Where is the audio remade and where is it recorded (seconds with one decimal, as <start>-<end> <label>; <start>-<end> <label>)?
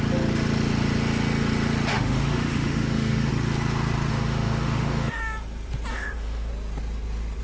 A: 0.0-1.9 recorded; 1.9-3.3 remade; 3.3-4.1 recorded; 4.1-5.2 remade; 5.2-5.9 recorded; 5.9-6.5 remade; 6.5-7.4 recorded